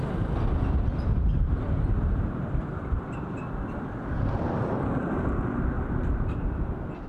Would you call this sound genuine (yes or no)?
no